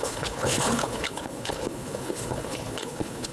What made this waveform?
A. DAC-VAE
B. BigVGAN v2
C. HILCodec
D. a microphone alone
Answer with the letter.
C